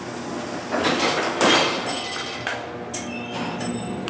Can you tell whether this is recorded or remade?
recorded